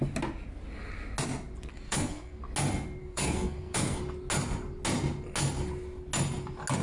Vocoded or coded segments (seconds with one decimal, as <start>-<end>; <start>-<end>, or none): 1.7-2.4; 3.0-4.0